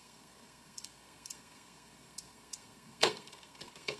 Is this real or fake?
fake